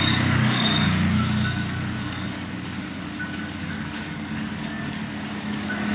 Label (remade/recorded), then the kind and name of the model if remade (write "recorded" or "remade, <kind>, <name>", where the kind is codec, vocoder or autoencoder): remade, codec, DAC